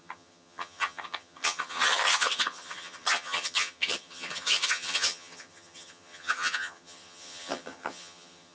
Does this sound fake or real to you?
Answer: fake